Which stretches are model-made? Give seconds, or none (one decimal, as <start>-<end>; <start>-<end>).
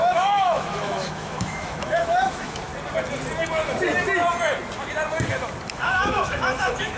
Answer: 0.0-2.7; 5.7-7.0